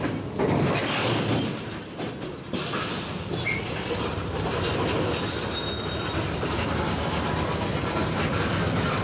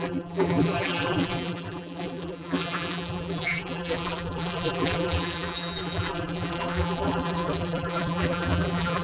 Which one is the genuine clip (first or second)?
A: first